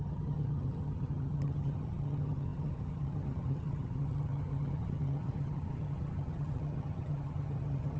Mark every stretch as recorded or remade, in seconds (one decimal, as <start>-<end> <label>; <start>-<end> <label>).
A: 0.0-8.0 remade